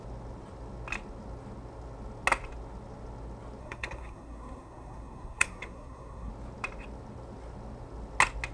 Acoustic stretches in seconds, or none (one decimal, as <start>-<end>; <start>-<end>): 0.0-3.6; 6.3-8.5